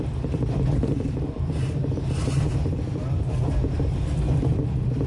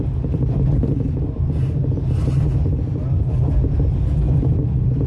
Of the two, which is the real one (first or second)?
second